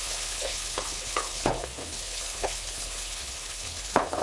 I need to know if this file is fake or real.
fake